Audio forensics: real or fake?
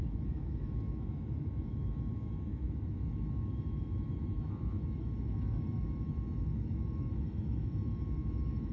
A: fake